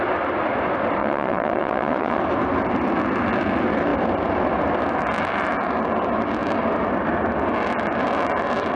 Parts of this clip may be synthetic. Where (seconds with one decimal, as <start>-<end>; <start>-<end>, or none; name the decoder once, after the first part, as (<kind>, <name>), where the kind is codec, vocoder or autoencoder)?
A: 1.0-2.2 (vocoder, WaveNeXt)